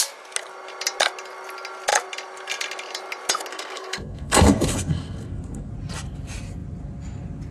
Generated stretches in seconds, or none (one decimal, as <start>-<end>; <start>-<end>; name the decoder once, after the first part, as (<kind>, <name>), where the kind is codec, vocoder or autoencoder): 3.5-5.7 (codec, SNAC)